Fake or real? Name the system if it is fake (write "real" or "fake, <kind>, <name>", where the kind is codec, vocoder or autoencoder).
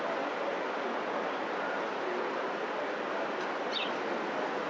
real